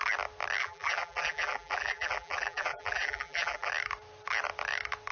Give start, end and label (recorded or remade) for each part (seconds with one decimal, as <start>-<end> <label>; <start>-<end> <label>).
0.0-0.6 recorded; 0.6-3.7 remade; 3.7-5.1 recorded